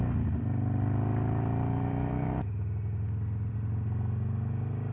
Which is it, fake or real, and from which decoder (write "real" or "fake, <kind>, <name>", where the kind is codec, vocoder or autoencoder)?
real